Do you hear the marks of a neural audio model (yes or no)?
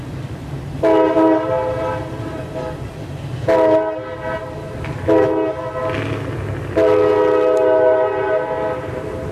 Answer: no